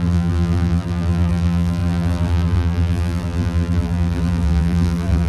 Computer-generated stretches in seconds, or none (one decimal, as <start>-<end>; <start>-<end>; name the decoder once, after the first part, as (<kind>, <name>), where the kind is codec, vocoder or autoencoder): 0.0-5.3 (vocoder, BigVGAN v2)